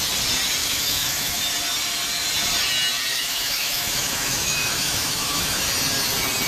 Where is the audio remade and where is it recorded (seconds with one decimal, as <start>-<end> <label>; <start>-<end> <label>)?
0.0-0.6 recorded; 0.6-1.4 remade; 1.4-3.1 recorded; 3.1-5.6 remade; 5.6-6.5 recorded